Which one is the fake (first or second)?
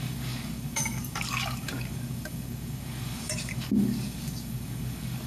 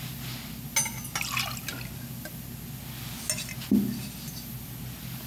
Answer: first